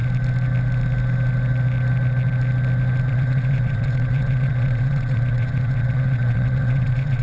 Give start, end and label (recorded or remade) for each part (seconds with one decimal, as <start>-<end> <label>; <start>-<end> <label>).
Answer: 0.0-3.1 recorded; 3.1-7.2 remade